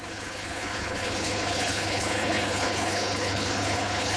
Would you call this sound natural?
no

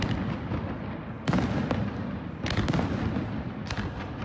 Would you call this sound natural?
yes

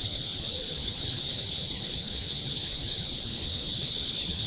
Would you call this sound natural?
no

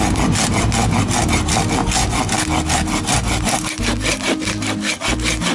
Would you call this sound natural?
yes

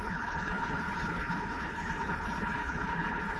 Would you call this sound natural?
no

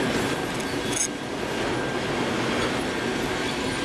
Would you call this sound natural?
yes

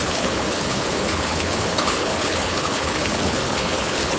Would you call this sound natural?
no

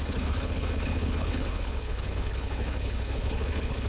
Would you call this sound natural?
no